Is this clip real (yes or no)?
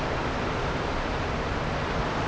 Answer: yes